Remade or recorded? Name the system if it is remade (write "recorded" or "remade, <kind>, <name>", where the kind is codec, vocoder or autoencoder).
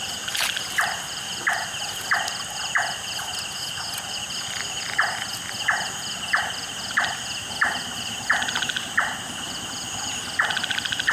recorded